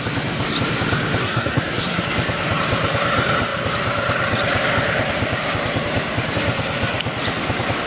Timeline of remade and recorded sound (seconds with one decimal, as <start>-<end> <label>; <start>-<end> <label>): 0.0-1.2 recorded; 1.2-2.0 remade; 2.0-7.9 recorded